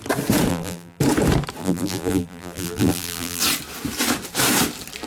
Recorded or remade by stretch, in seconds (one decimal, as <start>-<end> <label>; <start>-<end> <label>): 0.0-0.5 recorded; 0.5-1.0 remade; 1.0-1.6 recorded; 1.6-3.4 remade; 3.4-5.1 recorded